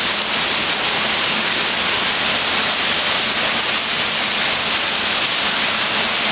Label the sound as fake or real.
real